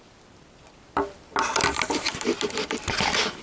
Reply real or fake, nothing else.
real